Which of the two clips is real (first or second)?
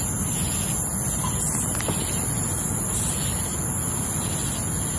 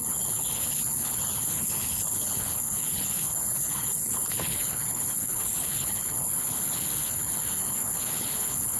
first